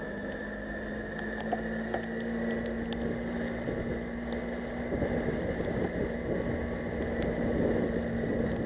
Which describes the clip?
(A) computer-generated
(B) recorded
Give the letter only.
B